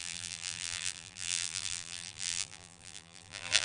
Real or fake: fake